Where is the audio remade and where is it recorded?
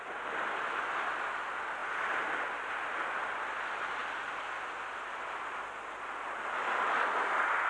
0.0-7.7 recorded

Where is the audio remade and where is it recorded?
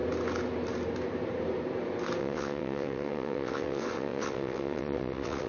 0.0-2.2 recorded; 2.2-5.5 remade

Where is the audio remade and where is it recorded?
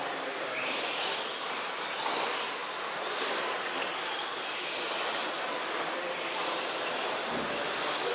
0.0-8.1 recorded